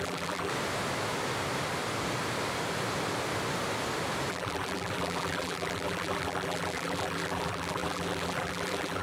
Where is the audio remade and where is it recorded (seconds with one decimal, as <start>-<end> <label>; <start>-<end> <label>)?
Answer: 0.0-0.5 remade; 0.5-4.3 recorded; 4.3-9.0 remade